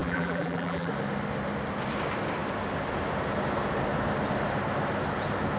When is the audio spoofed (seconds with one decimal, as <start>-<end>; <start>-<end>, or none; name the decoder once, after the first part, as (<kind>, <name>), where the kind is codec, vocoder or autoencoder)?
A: 0.0-0.9 (vocoder, BigVGAN v2)